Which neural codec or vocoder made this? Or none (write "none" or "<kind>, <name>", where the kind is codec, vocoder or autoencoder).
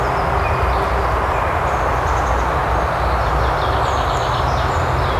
none